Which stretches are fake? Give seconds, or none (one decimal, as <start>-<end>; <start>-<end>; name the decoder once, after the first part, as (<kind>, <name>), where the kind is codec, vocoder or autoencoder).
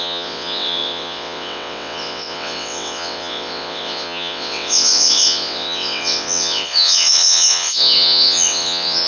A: 0.0-9.1 (vocoder, WaveNeXt)